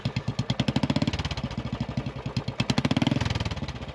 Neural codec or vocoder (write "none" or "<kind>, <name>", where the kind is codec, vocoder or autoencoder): none